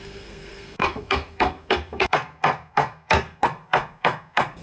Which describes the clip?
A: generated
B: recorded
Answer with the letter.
A